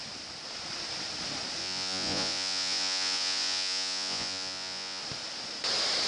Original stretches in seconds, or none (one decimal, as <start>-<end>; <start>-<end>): 0.0-1.6; 5.0-6.1